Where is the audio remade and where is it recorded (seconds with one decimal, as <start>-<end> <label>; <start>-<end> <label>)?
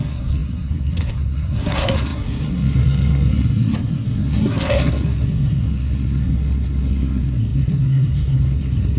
0.0-9.0 remade